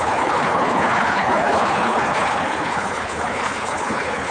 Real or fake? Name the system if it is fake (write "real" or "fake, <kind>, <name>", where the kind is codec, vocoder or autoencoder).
fake, codec, HILCodec